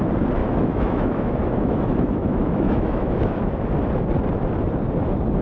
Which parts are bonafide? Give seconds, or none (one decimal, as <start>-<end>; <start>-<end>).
0.0-0.4; 3.6-5.4